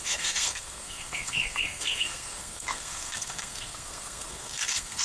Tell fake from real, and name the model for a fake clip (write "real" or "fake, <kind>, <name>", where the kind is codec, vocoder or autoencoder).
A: fake, codec, SNAC